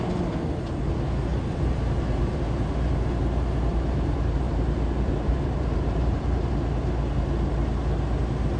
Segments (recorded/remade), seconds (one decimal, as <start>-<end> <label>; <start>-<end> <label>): 0.0-1.3 recorded; 1.3-6.5 remade; 6.5-8.6 recorded